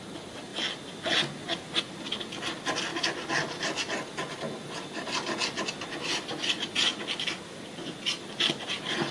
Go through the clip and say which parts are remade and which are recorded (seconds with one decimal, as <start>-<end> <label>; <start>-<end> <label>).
0.0-9.1 recorded